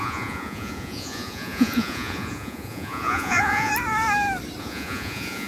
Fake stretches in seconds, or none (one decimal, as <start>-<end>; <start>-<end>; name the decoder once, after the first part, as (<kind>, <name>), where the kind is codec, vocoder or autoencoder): 0.0-3.7 (vocoder, Vocos); 4.6-5.5